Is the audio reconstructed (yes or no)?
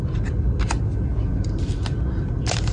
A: no